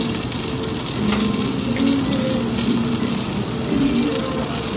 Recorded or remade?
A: recorded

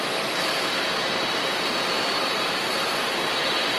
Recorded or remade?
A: remade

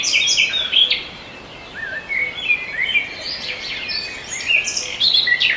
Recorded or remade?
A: recorded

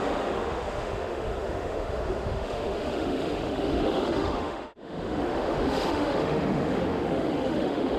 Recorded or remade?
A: remade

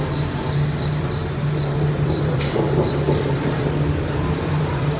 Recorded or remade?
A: remade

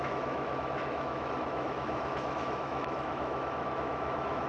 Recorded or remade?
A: remade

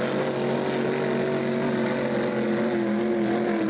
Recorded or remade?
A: recorded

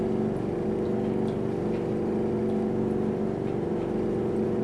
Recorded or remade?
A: recorded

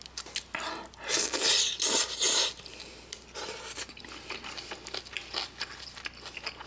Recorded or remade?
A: recorded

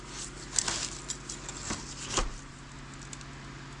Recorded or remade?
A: recorded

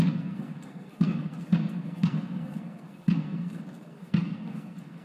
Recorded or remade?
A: remade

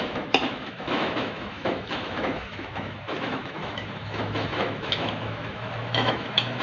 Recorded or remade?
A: remade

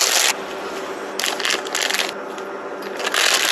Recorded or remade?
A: recorded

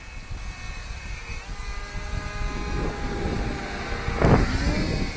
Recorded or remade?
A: recorded